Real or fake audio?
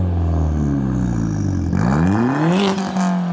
real